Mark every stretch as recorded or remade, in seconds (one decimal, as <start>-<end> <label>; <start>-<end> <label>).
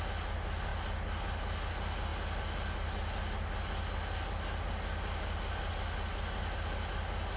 0.0-7.4 recorded